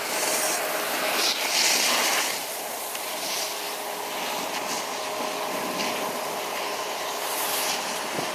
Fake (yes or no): no